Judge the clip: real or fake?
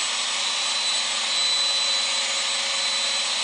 real